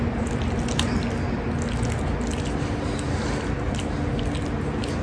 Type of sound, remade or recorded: recorded